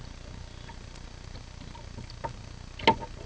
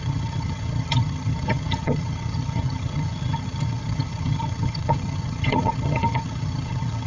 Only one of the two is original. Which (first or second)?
first